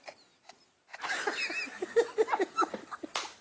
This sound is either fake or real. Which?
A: real